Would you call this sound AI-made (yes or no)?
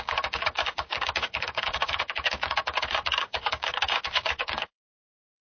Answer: yes